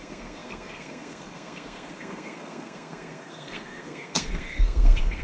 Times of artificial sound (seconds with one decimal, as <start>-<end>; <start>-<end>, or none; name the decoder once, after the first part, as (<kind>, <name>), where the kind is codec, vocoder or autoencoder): 0.0-5.2 (codec, SNAC)